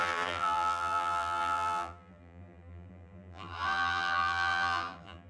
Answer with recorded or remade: remade